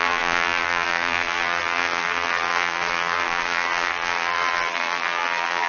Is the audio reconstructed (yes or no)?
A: yes